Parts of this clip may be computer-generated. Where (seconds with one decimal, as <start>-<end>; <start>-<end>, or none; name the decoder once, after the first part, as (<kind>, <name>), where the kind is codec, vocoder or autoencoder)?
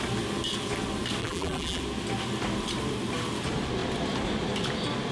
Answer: 1.2-1.8 (vocoder, BigVGAN v2)